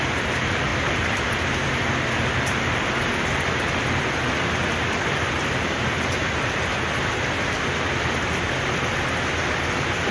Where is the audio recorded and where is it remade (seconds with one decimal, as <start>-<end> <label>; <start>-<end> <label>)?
0.0-10.1 recorded